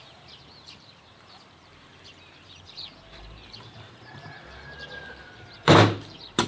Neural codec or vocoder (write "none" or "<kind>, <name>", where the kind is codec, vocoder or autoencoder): vocoder, BigVGAN v2